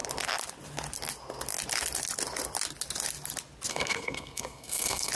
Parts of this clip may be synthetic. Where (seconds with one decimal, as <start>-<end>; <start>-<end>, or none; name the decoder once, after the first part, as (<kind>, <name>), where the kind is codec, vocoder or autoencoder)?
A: 3.7-5.1 (codec, SNAC)